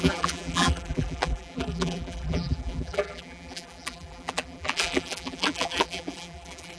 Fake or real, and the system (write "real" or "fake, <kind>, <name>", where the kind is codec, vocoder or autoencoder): fake, vocoder, BigVGAN v2